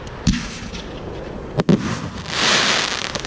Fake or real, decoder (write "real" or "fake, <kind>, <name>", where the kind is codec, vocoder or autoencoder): real